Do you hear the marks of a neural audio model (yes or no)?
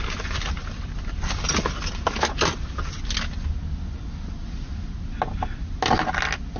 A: no